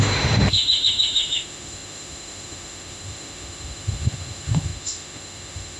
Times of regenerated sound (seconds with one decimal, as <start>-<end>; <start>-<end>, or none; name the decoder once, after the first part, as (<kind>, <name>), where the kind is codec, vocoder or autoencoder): 0.0-5.8 (autoencoder, DAC-VAE)